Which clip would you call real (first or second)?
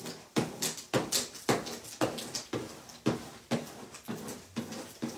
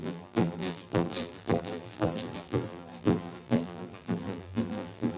first